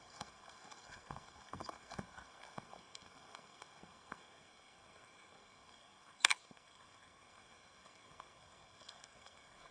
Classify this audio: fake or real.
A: fake